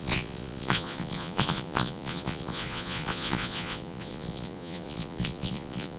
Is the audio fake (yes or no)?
yes